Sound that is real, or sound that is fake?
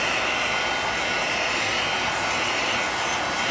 real